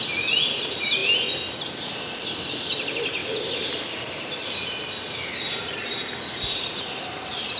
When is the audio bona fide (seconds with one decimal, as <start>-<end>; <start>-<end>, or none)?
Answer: 0.0-7.6